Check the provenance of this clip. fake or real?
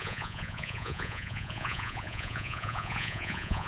fake